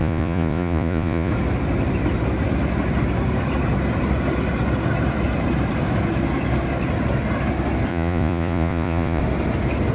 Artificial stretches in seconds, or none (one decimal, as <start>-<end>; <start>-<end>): 0.0-1.3; 7.9-9.2